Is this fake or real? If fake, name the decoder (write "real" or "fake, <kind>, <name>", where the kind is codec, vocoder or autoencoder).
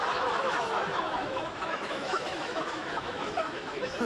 fake, autoencoder, DAC-VAE